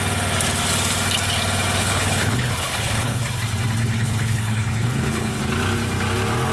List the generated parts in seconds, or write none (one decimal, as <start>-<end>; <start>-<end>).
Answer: 1.8-3.2; 3.8-5.4